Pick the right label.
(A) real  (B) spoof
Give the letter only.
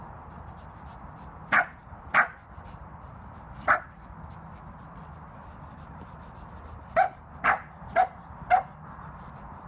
A